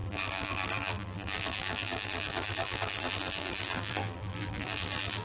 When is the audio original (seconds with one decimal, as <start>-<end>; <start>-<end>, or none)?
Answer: none